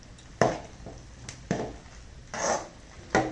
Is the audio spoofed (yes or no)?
no